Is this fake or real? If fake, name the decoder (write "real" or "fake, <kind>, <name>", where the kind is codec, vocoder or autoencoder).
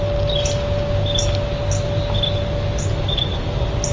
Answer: real